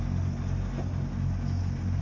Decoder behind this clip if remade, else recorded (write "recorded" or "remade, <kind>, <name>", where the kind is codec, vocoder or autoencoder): recorded